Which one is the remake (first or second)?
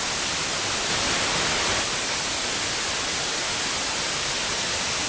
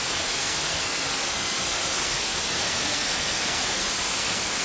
second